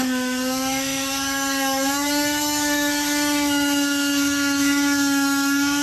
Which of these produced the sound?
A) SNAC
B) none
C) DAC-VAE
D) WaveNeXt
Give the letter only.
C